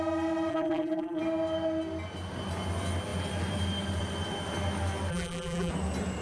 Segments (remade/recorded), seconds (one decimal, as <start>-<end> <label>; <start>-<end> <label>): 0.0-0.5 recorded; 0.5-1.2 remade; 1.2-5.1 recorded; 5.1-5.7 remade; 5.7-6.2 recorded